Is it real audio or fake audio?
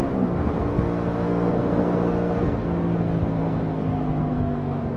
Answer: fake